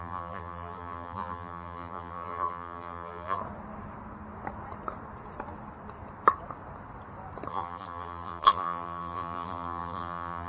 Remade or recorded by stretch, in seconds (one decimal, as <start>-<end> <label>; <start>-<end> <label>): 0.0-3.4 remade; 3.4-7.5 recorded; 7.5-10.5 remade